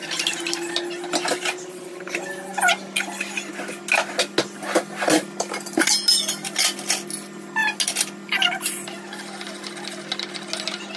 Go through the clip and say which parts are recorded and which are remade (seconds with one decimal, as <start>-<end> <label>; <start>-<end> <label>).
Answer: 0.0-11.0 recorded